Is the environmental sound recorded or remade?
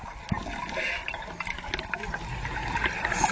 recorded